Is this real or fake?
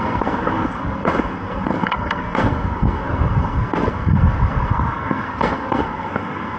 fake